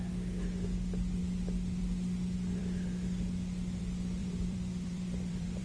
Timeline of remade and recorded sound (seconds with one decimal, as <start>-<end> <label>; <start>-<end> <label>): 0.0-4.2 recorded; 4.2-5.6 remade